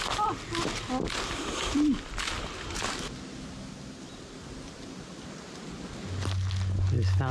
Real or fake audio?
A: real